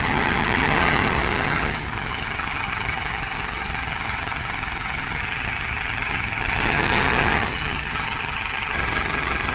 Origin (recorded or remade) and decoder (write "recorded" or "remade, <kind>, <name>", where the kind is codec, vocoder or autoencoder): remade, vocoder, HiFi-GAN